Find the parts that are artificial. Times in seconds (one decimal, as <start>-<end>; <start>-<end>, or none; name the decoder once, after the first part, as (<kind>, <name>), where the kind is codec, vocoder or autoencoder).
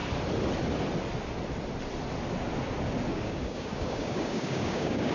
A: 3.1-5.1 (codec, DAC)